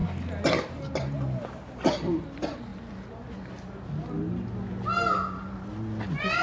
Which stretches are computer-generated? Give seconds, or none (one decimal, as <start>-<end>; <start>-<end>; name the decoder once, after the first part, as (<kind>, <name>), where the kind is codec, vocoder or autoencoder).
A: none